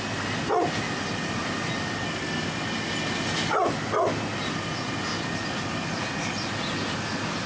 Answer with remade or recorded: recorded